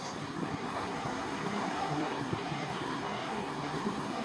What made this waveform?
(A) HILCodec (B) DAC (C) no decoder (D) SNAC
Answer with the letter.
D